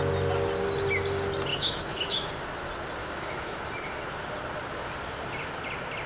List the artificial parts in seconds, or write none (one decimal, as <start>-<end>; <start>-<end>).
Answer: 1.5-2.3; 3.0-3.6